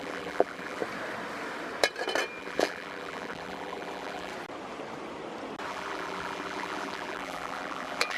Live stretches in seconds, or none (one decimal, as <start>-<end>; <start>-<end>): 0.8-2.4; 4.3-5.7